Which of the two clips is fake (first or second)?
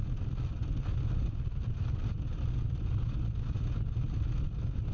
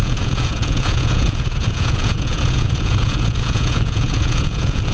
second